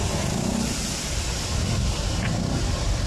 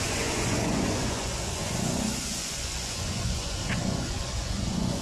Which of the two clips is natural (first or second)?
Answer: first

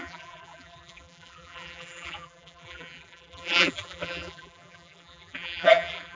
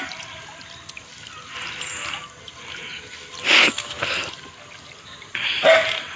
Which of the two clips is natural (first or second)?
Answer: second